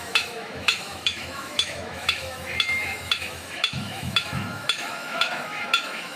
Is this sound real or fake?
fake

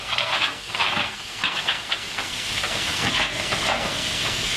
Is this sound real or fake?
fake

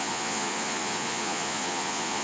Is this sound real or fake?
fake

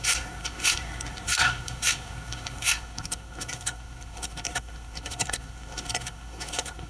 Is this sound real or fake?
fake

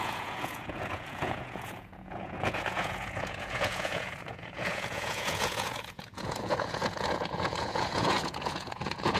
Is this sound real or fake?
fake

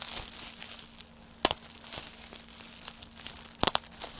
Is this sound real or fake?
real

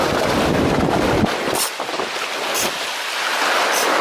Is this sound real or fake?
real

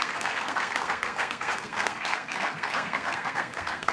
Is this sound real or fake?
fake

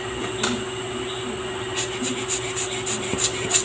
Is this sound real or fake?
real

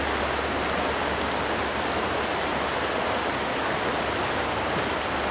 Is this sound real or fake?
real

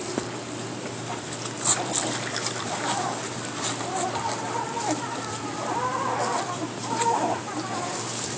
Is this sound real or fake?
fake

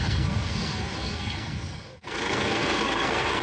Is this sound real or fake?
fake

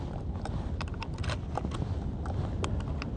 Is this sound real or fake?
real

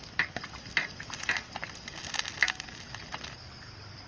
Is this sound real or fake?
real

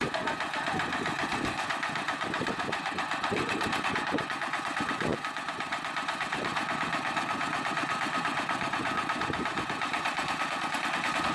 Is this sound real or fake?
fake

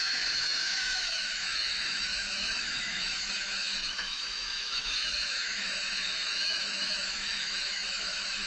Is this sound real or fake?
fake